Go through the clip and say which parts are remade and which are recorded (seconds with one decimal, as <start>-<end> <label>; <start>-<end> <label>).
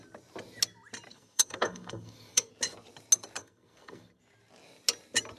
0.0-1.1 recorded; 1.1-2.5 remade; 2.5-3.4 recorded; 3.4-4.2 remade; 4.2-5.4 recorded